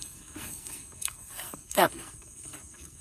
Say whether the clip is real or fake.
fake